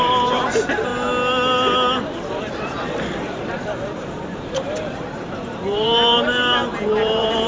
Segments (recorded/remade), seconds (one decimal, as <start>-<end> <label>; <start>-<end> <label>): 0.0-0.9 remade; 0.9-2.4 recorded; 2.4-7.5 remade